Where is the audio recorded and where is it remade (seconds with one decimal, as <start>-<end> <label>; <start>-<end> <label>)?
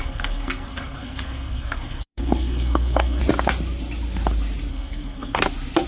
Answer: 0.0-3.2 remade; 3.2-4.7 recorded; 4.7-5.4 remade; 5.4-5.9 recorded